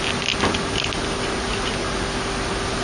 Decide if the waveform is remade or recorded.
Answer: recorded